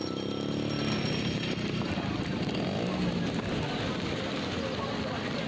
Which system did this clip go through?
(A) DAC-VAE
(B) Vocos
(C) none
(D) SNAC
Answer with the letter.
C